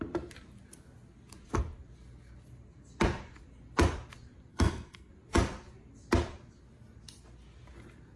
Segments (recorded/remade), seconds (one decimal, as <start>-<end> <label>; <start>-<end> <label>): 0.0-4.5 recorded; 4.5-5.1 remade; 5.1-8.2 recorded